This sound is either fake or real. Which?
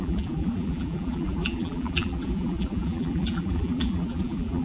fake